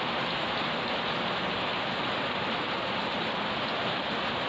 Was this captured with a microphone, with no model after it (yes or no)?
yes